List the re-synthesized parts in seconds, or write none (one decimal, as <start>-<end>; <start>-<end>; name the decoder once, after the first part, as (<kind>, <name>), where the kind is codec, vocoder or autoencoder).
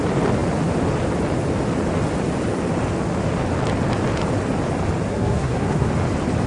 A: 5.1-5.9 (codec, SNAC)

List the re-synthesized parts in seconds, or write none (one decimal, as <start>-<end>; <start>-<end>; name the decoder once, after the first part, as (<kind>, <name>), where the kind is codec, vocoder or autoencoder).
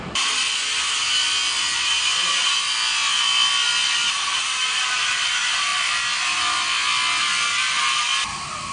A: none